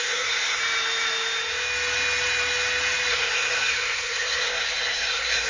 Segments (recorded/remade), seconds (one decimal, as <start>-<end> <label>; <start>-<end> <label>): 0.0-0.6 remade; 0.6-3.1 recorded; 3.1-5.5 remade